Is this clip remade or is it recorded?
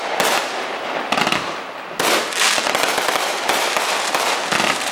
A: recorded